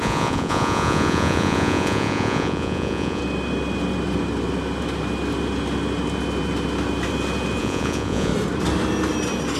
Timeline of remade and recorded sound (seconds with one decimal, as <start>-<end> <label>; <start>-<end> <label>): 0.0-3.2 remade; 3.2-7.6 recorded; 7.6-8.3 remade; 8.3-9.6 recorded